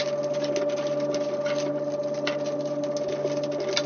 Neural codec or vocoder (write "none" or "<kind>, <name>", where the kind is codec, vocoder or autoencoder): none